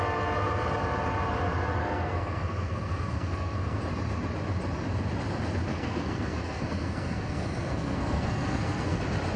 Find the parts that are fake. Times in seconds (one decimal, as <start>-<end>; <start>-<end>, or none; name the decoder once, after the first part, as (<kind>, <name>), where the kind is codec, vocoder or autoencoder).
1.8-3.8 (codec, SNAC); 5.7-9.0